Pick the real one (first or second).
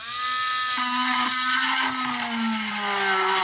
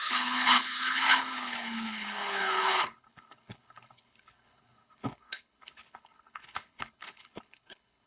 first